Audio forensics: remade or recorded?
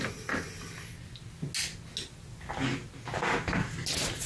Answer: recorded